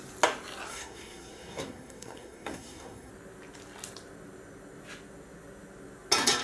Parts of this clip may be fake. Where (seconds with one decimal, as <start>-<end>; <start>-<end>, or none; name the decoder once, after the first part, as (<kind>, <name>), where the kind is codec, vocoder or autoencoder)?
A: 0.7-3.1 (codec, SNAC)